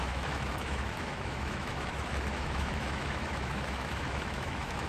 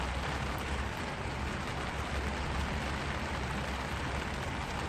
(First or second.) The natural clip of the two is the second